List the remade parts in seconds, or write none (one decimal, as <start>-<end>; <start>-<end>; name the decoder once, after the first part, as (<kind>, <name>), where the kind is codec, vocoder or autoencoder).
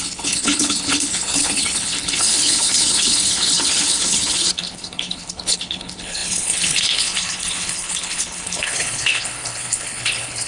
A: 0.0-10.5 (codec, HILCodec)